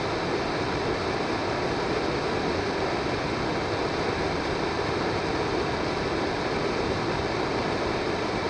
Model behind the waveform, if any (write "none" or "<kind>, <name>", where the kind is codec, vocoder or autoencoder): none